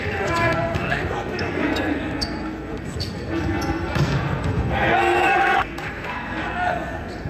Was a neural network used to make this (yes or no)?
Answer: yes